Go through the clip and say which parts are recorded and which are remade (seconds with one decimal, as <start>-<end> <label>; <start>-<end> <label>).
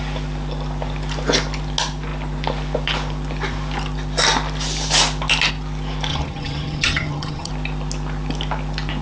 0.0-6.1 recorded; 6.1-7.5 remade; 7.5-9.0 recorded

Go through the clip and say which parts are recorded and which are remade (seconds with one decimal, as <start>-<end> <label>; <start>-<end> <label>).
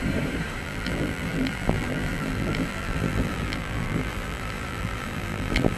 0.0-0.6 recorded; 0.6-5.8 remade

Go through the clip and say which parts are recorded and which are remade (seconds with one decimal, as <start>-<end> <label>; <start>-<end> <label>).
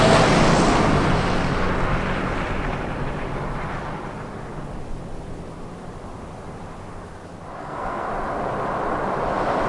0.0-7.6 recorded; 7.6-8.1 remade; 8.1-9.7 recorded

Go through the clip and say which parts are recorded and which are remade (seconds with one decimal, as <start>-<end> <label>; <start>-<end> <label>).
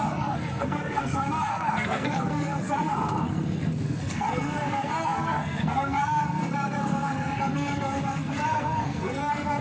0.0-9.6 remade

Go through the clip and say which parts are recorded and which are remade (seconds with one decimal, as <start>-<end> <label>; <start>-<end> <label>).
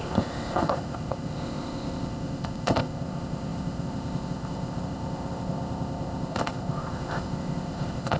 0.0-8.2 remade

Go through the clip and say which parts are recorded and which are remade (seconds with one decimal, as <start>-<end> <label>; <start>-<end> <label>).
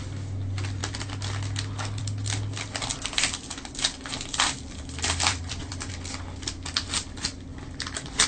0.0-2.9 recorded; 2.9-5.9 remade; 5.9-7.5 recorded; 7.5-8.3 remade